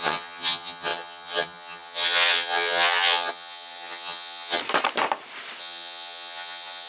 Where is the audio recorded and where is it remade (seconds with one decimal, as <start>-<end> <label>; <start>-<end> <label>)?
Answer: 0.0-4.6 remade; 4.6-5.6 recorded; 5.6-6.9 remade